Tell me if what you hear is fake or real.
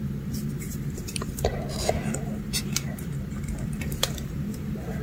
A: fake